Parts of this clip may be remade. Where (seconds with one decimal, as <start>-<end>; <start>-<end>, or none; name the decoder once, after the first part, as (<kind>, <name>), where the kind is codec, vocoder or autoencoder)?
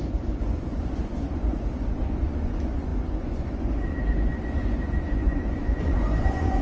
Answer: 0.0-6.6 (vocoder, Vocos)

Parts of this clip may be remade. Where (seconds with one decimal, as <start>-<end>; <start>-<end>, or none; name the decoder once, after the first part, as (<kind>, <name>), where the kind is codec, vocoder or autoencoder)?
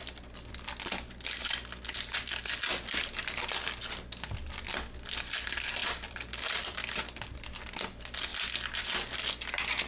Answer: 5.8-7.2 (vocoder, BigVGAN v2)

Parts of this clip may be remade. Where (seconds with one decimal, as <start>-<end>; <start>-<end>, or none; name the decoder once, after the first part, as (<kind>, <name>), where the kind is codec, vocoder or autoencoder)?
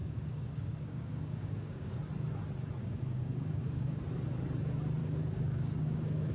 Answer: 0.0-2.0 (codec, DAC); 2.8-4.0; 5.0-6.3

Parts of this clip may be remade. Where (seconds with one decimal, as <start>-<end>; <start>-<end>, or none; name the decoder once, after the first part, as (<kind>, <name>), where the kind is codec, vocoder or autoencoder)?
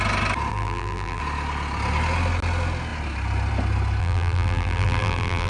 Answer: 0.5-1.2 (vocoder, BigVGAN v2); 4.0-5.5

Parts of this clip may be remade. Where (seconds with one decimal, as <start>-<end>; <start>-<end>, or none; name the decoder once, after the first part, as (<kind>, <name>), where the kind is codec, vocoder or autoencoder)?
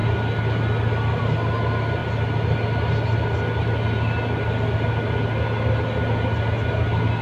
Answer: none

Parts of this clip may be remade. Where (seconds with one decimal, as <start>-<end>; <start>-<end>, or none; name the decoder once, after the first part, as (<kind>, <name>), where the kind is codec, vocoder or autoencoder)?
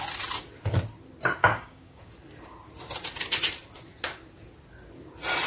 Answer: 1.4-2.1 (codec, DAC)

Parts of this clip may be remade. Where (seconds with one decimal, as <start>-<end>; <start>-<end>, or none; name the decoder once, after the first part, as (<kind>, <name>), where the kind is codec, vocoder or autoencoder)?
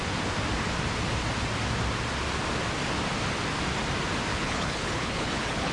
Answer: 4.3-5.7 (codec, HILCodec)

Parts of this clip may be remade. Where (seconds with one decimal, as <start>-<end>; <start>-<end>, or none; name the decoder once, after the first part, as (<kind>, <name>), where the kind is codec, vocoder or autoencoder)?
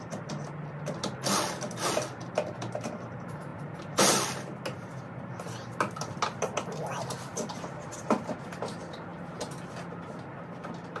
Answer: none